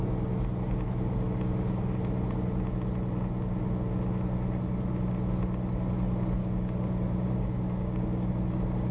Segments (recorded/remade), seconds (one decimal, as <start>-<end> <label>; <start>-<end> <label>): 0.0-6.4 recorded; 6.4-8.3 remade; 8.3-8.9 recorded

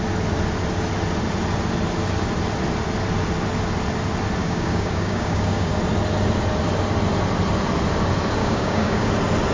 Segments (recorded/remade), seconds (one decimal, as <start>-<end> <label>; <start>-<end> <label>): 0.0-4.4 recorded; 4.4-5.7 remade; 5.7-8.4 recorded; 8.4-9.1 remade; 9.1-9.5 recorded

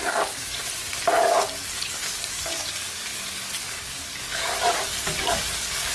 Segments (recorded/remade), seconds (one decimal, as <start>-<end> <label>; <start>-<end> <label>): 0.0-0.6 remade; 0.6-1.2 recorded; 1.2-5.9 remade

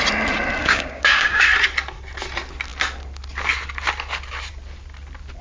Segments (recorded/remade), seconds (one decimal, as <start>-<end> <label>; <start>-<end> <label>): 0.0-0.6 recorded; 0.6-1.4 remade; 1.4-5.4 recorded

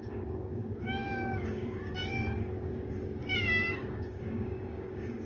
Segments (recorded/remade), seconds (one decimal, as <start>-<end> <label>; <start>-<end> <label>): 0.0-5.2 remade

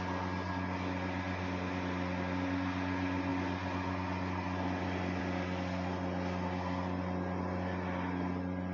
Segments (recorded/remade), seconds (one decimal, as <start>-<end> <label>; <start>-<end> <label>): 0.0-8.7 recorded

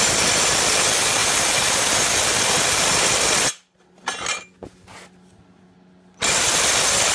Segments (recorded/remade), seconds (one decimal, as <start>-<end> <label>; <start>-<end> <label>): 0.0-7.1 recorded

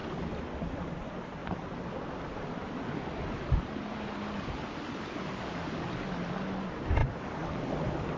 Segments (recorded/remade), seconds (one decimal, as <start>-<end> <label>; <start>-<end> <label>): 0.0-8.2 recorded